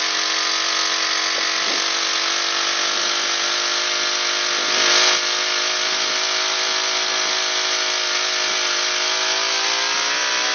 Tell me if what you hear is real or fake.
real